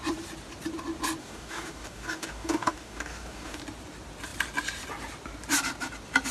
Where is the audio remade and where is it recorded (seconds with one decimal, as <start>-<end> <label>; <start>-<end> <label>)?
0.0-1.2 recorded; 1.2-3.6 remade; 3.6-6.3 recorded